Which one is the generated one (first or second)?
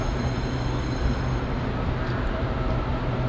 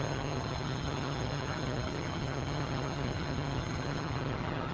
second